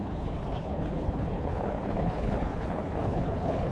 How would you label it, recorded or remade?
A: remade